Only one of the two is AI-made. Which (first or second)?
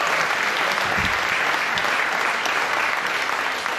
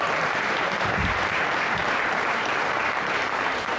second